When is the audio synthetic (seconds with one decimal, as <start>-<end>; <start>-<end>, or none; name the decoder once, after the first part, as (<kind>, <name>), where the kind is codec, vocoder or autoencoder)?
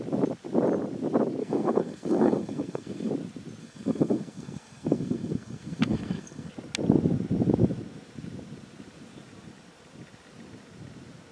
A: 1.4-3.1 (codec, SNAC); 3.6-6.5